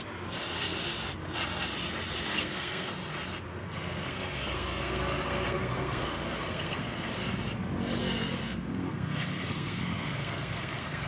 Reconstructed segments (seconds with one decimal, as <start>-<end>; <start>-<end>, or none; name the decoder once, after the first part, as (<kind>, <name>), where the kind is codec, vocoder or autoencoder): 2.3-2.9 (codec, SNAC); 3.5-7.3; 8.0-11.1